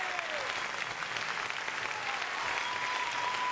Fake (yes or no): no